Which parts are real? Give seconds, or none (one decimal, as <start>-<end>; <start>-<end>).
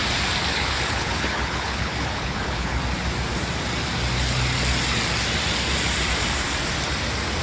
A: 0.0-0.5; 2.8-7.4